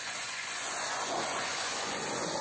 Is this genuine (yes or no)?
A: no